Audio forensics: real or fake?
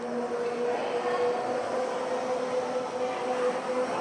real